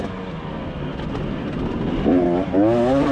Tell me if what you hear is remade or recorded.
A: recorded